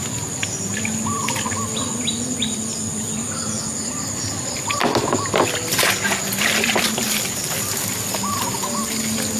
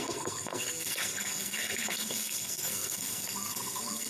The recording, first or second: first